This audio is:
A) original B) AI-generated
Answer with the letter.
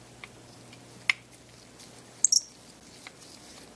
A